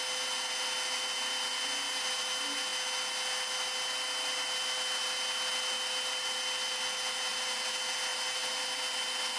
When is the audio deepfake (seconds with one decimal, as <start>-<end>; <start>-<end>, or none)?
none